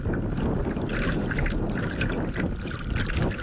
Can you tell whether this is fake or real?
real